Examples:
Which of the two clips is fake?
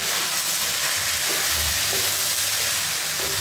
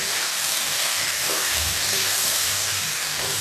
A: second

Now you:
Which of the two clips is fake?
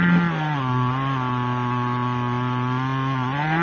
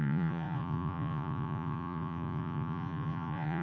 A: second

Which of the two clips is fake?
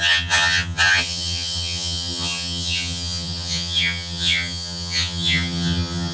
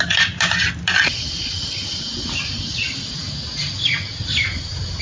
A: first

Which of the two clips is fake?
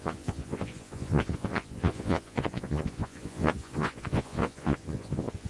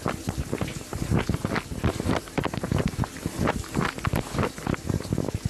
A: first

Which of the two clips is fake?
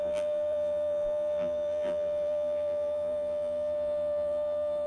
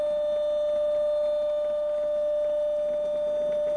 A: first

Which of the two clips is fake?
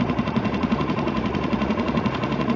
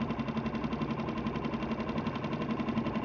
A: first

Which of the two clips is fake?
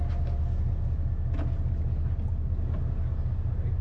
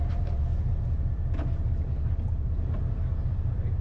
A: second